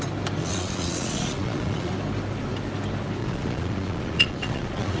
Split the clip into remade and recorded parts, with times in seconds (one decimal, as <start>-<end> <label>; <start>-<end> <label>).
0.0-0.4 recorded; 0.4-1.9 remade; 1.9-3.2 recorded; 3.2-5.0 remade